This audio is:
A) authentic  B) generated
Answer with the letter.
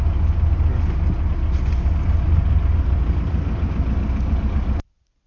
A